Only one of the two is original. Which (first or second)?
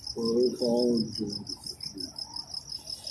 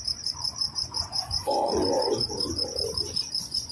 first